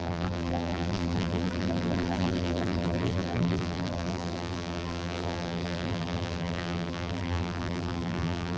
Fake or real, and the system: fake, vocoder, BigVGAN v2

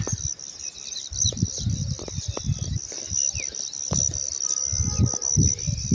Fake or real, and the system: real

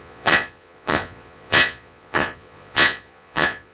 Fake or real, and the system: fake, vocoder, Vocos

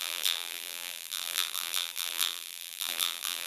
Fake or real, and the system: fake, vocoder, BigVGAN v2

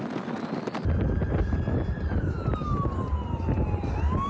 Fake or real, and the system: real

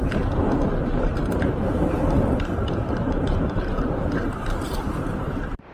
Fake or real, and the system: fake, vocoder, BigVGAN v2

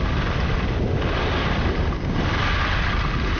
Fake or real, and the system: real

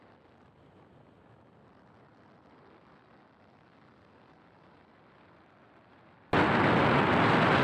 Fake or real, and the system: real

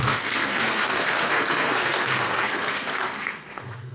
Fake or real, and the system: fake, codec, SNAC